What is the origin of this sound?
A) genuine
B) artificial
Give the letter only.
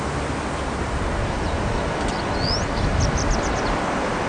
A